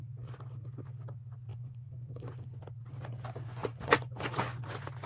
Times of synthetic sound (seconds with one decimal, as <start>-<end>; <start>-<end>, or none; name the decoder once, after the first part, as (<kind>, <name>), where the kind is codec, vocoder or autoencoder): 1.5-2.6 (vocoder, Vocos); 3.5-4.6

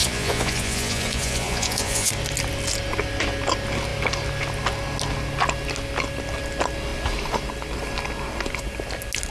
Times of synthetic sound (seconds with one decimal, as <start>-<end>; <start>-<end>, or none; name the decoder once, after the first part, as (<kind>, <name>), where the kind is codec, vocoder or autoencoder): 0.0-2.1 (vocoder, Vocos)

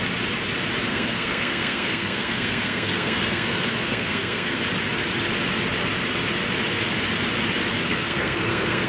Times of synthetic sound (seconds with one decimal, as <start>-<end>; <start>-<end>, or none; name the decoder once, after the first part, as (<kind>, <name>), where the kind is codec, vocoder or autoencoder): 0.9-4.6 (codec, SNAC); 7.8-8.9

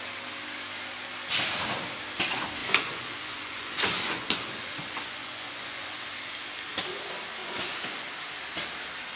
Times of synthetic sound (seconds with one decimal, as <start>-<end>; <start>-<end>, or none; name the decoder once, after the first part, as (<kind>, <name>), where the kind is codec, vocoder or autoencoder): 2.6-6.0 (vocoder, Vocos); 7.4-8.1

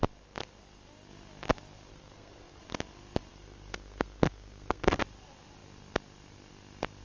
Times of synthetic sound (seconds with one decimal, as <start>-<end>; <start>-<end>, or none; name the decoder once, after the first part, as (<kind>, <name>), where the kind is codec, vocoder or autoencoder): 1.9-2.6 (codec, SNAC); 3.3-5.0

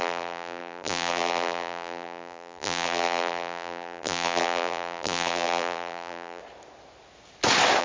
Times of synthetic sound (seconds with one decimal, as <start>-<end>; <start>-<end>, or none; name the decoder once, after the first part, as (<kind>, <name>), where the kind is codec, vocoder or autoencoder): 0.0-6.4 (vocoder, BigVGAN v2)

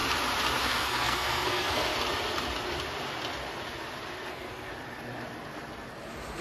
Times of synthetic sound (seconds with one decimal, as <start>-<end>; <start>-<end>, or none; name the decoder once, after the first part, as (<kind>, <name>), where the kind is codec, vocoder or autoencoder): 0.6-1.9 (codec, SNAC); 4.3-4.7

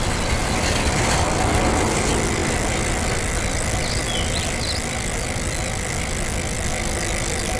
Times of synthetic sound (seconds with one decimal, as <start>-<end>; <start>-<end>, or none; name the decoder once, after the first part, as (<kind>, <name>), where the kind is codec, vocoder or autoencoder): none